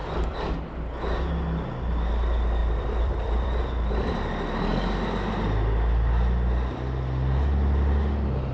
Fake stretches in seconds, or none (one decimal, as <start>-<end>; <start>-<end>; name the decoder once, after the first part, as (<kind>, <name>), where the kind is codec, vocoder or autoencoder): 0.0-0.6 (vocoder, BigVGAN v2); 2.6-3.6